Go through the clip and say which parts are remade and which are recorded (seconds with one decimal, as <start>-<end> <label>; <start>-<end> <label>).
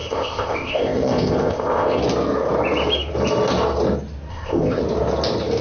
0.0-2.0 remade; 2.0-4.3 recorded; 4.3-4.8 remade; 4.8-5.6 recorded